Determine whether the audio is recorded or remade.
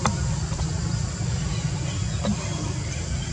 remade